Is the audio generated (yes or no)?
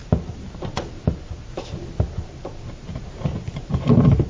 no